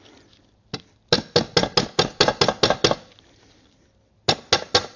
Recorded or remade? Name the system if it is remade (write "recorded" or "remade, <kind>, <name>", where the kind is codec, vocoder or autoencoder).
recorded